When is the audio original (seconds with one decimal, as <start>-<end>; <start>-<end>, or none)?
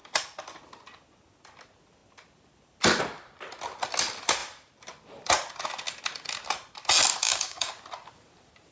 0.0-7.2; 7.7-8.7